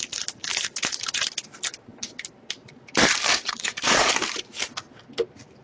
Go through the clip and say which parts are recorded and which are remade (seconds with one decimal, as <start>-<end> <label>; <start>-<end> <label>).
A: 0.0-3.3 recorded; 3.3-4.1 remade; 4.1-5.6 recorded